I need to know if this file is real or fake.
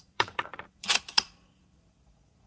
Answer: fake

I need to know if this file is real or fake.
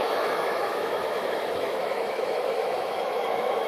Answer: fake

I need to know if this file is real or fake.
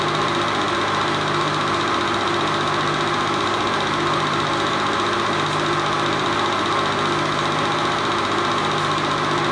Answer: real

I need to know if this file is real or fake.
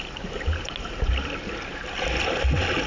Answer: real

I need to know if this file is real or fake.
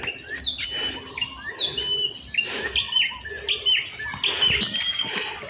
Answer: real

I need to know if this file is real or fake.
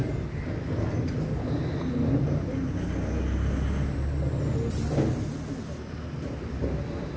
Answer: real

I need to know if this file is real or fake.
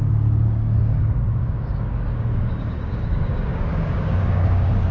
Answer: fake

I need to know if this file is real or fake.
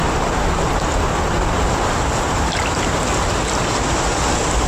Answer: real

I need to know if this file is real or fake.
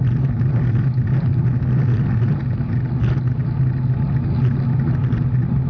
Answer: real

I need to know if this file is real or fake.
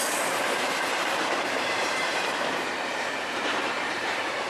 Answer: fake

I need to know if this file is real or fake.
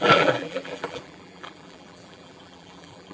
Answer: fake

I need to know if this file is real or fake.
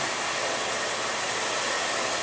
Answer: real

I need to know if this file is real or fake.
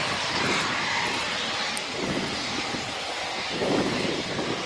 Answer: real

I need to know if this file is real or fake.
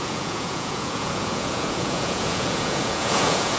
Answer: fake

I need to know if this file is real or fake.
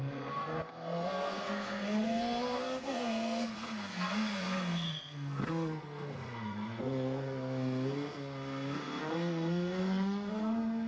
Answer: fake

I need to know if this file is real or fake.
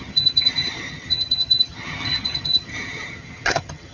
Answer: fake